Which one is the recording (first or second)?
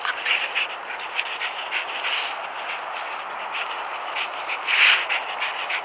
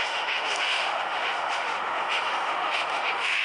first